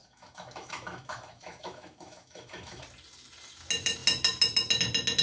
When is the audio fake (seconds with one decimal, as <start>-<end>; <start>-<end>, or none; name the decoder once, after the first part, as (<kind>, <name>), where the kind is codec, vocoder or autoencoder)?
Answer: 0.0-2.8 (autoencoder, DAC-VAE)